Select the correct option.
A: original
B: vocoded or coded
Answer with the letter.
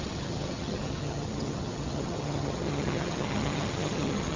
B